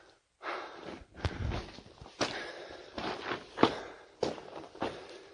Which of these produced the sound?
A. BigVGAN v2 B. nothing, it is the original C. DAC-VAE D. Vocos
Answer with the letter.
B